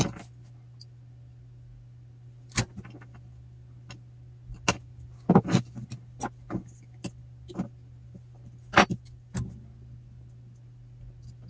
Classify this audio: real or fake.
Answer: real